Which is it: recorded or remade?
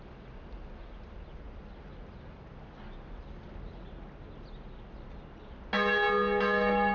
recorded